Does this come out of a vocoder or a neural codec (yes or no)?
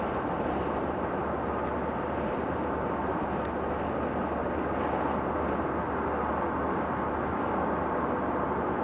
no